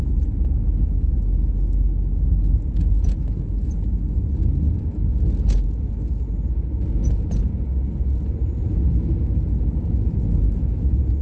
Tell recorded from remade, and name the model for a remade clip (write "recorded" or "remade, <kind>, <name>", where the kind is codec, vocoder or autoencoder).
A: recorded